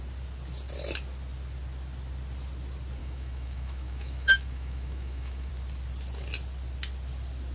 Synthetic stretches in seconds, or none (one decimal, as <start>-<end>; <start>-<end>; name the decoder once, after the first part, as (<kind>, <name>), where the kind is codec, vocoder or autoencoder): 3.0-5.5 (autoencoder, DAC-VAE)

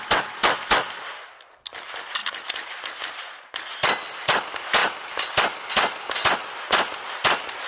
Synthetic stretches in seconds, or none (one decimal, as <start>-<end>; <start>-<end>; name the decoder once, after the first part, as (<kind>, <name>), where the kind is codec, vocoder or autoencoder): none

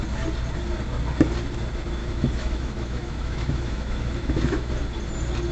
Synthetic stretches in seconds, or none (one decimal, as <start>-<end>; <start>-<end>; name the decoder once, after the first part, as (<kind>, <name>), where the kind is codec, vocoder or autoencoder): 2.0-4.7 (autoencoder, DAC-VAE)

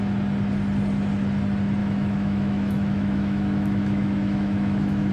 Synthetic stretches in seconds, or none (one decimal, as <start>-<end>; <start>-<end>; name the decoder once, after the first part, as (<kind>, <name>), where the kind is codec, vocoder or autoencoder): 1.8-5.1 (autoencoder, DAC-VAE)

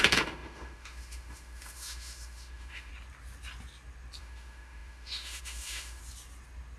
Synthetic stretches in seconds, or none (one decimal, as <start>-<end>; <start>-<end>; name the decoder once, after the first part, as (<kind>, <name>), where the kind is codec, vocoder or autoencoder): 0.0-2.9 (autoencoder, DAC-VAE); 4.2-6.0